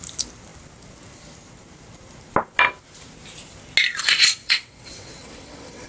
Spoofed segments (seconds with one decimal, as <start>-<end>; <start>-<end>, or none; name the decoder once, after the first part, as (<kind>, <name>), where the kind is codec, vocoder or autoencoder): 4.4-5.9 (vocoder, WaveNeXt)